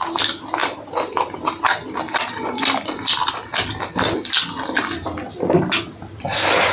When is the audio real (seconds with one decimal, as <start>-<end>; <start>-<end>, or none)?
0.0-6.7